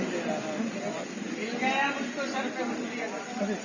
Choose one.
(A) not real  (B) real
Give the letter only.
B